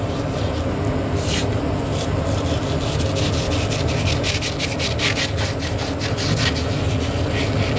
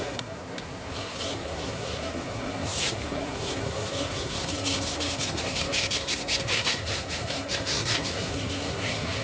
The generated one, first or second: second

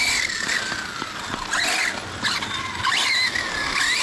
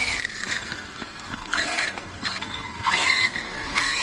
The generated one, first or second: second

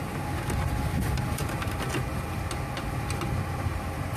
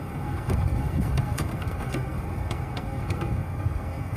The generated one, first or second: second